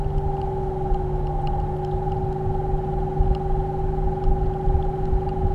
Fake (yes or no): no